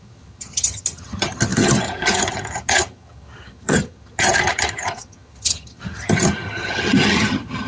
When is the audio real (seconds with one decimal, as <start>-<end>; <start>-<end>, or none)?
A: none